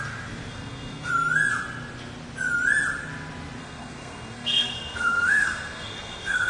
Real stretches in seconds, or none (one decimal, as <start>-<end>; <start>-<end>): 0.0-0.5; 1.1-3.6